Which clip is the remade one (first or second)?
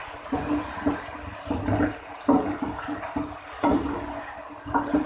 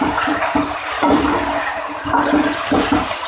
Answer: second